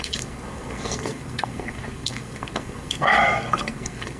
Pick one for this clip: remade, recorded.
remade